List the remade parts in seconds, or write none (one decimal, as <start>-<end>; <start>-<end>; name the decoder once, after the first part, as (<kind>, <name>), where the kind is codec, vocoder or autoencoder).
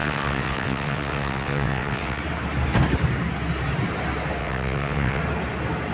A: 0.0-2.2 (vocoder, WaveNeXt); 4.4-5.2